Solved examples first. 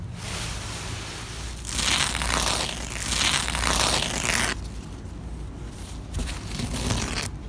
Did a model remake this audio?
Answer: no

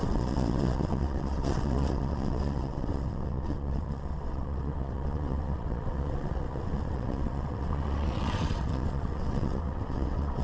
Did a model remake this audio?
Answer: yes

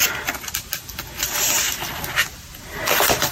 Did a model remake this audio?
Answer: no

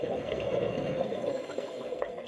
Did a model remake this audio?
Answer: yes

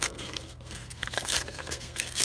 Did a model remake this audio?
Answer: yes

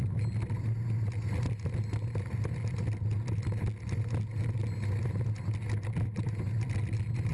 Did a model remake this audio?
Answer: no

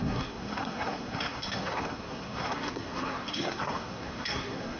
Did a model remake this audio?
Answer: yes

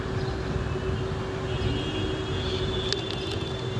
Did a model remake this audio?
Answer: no